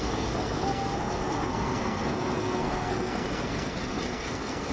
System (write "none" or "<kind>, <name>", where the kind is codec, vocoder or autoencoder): codec, SNAC